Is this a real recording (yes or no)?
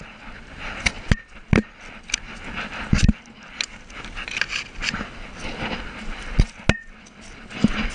yes